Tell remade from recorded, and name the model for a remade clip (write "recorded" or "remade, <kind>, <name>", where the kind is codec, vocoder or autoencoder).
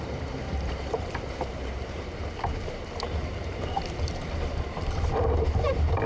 remade, vocoder, BigVGAN v2